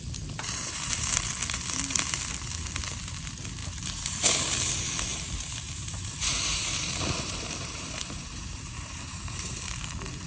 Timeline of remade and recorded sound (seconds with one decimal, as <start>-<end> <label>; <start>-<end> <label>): 0.0-0.6 recorded; 0.6-1.3 remade; 1.3-3.6 recorded; 3.6-4.5 remade; 4.5-5.1 recorded; 5.1-9.5 remade; 9.5-10.3 recorded